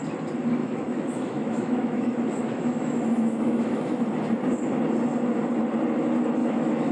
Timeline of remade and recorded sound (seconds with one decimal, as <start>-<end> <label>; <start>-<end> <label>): 0.0-0.6 recorded; 0.6-4.0 remade; 4.0-6.4 recorded; 6.4-6.9 remade